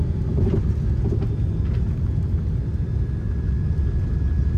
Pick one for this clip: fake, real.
real